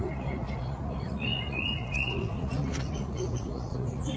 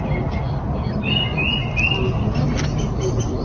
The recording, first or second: second